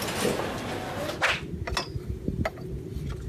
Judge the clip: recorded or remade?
recorded